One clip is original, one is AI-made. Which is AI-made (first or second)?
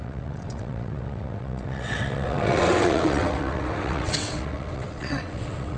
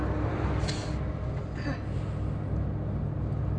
first